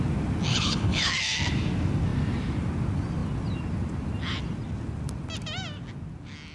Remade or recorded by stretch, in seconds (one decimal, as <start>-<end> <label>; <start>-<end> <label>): 0.0-0.5 recorded; 0.5-1.1 remade; 1.1-6.5 recorded